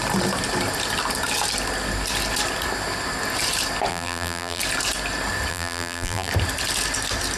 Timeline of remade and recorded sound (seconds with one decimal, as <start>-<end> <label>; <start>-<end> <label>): 0.0-3.9 recorded; 3.9-4.6 remade; 4.6-5.5 recorded; 5.5-6.3 remade; 6.3-7.4 recorded

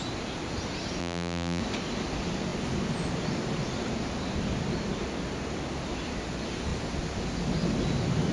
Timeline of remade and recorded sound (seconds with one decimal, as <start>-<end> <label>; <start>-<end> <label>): 0.0-1.0 recorded; 1.0-1.6 remade; 1.6-8.3 recorded

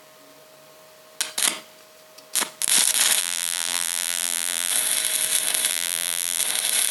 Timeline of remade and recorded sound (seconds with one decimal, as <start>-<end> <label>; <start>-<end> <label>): 0.0-3.2 recorded; 3.2-4.7 remade; 4.7-5.7 recorded; 5.7-6.4 remade; 6.4-6.9 recorded

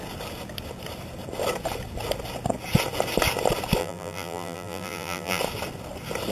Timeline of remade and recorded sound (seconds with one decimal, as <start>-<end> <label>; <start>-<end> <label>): 0.0-3.8 recorded; 3.8-5.4 remade; 5.4-6.3 recorded

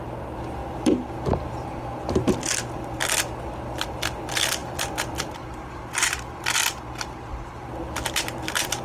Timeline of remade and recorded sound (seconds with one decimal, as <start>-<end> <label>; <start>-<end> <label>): 0.0-0.6 recorded; 0.6-1.8 remade; 1.8-4.6 recorded; 4.6-5.8 remade; 5.8-8.8 recorded

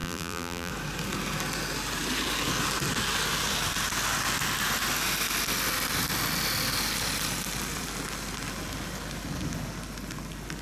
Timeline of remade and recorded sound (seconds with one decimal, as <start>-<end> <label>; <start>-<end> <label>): 0.0-0.7 remade; 0.7-10.6 recorded

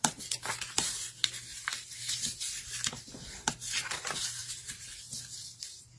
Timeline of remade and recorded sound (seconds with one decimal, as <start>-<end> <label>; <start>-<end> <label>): 0.0-1.5 recorded; 1.5-3.5 remade; 3.5-4.4 recorded; 4.4-5.0 remade; 5.0-5.4 recorded; 5.4-6.0 remade